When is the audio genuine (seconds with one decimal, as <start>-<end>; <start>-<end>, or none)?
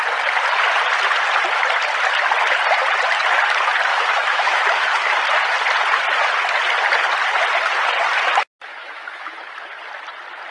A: 0.0-3.9; 5.1-8.7; 9.3-10.5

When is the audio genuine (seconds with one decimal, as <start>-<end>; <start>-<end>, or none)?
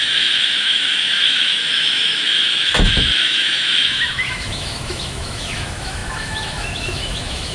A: none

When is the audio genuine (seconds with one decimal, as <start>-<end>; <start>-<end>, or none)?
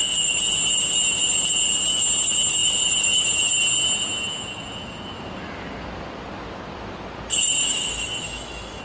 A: 0.0-7.6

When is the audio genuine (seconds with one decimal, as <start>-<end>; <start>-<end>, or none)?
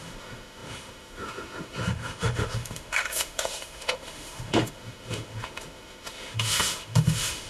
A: none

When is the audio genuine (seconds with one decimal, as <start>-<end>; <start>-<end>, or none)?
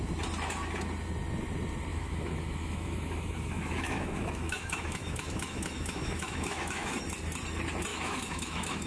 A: 0.0-1.9; 7.0-7.9